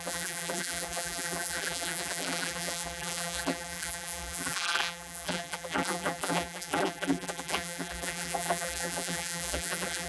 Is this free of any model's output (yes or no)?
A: no